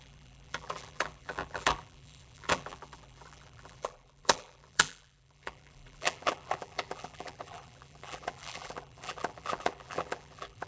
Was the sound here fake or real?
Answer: fake